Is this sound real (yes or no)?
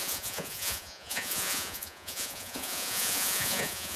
no